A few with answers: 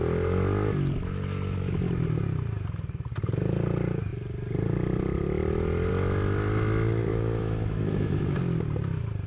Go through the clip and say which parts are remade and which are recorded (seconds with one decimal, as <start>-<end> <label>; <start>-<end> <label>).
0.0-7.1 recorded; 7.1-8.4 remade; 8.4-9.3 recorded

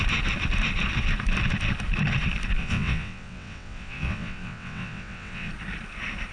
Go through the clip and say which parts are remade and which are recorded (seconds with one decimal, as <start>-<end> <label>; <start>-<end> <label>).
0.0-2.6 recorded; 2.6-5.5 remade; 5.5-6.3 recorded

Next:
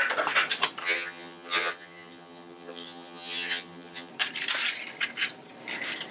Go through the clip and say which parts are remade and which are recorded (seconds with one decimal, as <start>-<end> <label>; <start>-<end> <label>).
0.0-0.8 recorded; 0.8-4.1 remade; 4.1-6.1 recorded

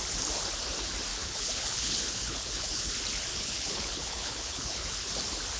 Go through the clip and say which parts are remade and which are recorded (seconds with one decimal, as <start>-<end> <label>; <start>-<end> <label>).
0.0-1.1 recorded; 1.1-2.9 remade; 2.9-3.3 recorded; 3.3-5.1 remade; 5.1-5.6 recorded

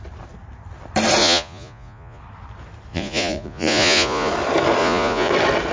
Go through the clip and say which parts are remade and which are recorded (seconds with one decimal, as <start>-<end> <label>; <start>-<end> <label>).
0.0-1.2 recorded; 1.2-2.2 remade; 2.2-2.9 recorded; 2.9-4.3 remade; 4.3-4.8 recorded; 4.8-5.3 remade; 5.3-5.7 recorded